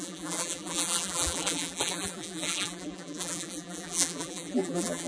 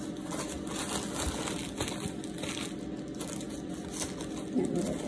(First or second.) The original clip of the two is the second